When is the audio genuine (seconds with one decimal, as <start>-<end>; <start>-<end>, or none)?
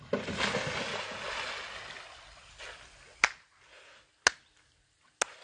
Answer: 0.0-5.4